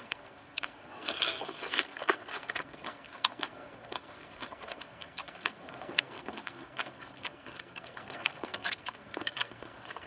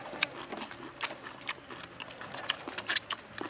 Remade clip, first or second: first